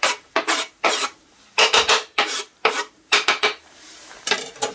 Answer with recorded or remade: remade